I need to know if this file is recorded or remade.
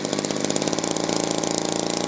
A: recorded